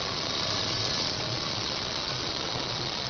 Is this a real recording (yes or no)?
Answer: no